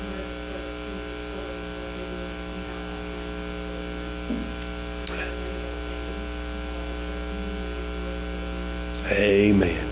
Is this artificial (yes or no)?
no